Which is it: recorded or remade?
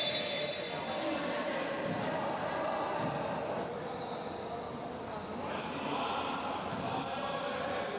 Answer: recorded